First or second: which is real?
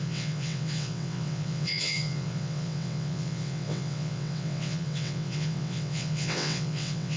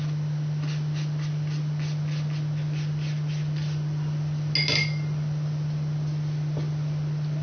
second